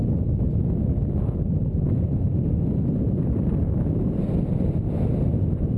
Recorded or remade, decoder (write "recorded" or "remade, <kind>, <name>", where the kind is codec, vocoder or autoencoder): recorded